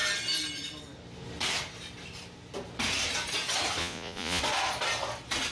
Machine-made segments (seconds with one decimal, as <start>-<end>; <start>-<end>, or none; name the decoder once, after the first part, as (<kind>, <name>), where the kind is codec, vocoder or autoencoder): 3.8-4.4 (vocoder, Vocos)